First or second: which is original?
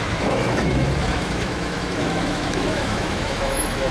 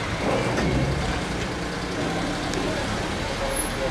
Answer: second